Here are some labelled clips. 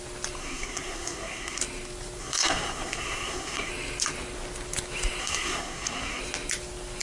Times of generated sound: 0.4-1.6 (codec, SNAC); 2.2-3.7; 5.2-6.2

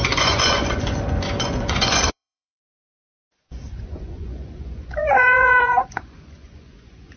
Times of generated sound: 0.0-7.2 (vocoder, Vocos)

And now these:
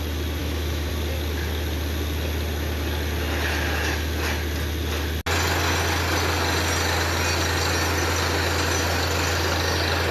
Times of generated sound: 0.4-0.9 (autoencoder, DAC-VAE)

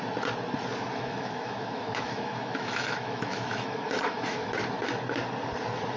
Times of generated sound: 0.9-4.5 (autoencoder, DAC-VAE)

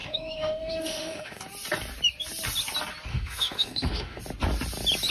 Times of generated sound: 0.0-1.4 (autoencoder, DAC-VAE); 3.1-4.2